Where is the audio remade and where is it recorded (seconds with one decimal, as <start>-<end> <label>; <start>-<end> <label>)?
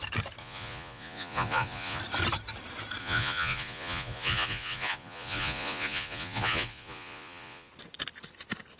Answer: 0.0-0.4 recorded; 0.4-2.0 remade; 2.0-3.0 recorded; 3.0-7.7 remade; 7.7-8.8 recorded